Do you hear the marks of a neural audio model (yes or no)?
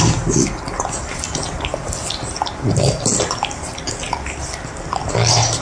no